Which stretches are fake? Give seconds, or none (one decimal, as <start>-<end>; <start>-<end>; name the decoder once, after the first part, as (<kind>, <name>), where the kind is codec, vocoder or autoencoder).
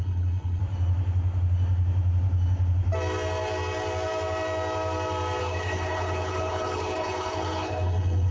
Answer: 0.0-0.6 (codec, HILCodec); 5.4-8.3